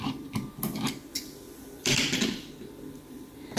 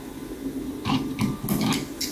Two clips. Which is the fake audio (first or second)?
first